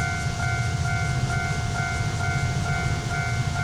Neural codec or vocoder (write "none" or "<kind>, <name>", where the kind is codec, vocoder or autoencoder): none